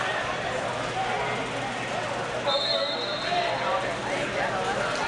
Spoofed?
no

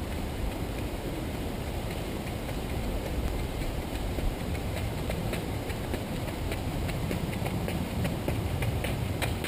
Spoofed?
yes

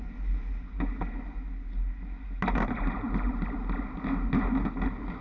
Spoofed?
no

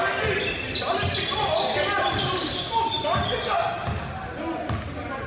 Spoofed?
no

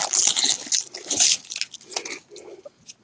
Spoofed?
no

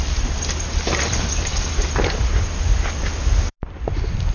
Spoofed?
no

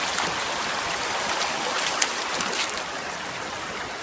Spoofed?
no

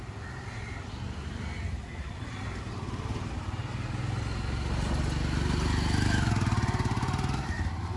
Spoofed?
no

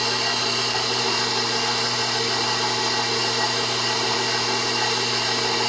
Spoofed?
no